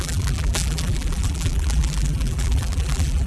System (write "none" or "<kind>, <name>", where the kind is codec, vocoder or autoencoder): vocoder, BigVGAN v2